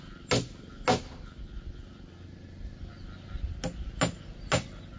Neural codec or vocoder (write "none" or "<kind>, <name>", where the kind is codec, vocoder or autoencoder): none